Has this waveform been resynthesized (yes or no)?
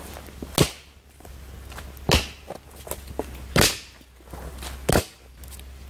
no